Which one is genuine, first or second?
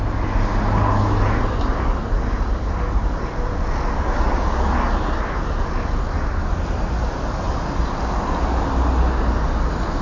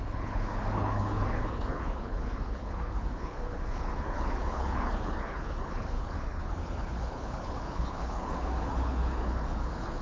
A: first